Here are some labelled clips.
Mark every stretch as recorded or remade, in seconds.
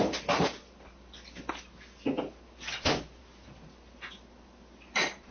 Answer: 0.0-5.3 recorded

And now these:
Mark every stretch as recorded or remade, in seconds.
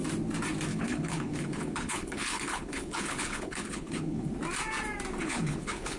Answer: 0.0-0.7 recorded; 0.7-4.3 remade; 4.3-5.2 recorded; 5.2-6.0 remade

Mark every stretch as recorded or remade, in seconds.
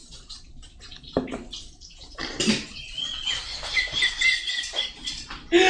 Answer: 0.0-5.7 recorded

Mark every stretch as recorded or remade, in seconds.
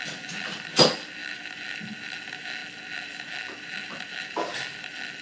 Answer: 0.0-5.2 recorded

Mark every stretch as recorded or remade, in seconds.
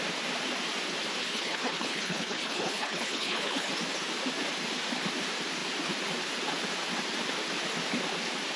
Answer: 0.0-1.2 recorded; 1.2-3.7 remade; 3.7-8.6 recorded